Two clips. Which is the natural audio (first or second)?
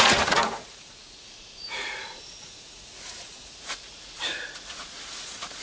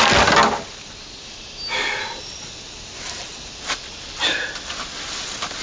second